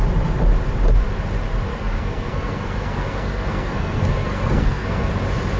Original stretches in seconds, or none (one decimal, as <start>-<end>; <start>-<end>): 0.0-1.7; 5.1-5.6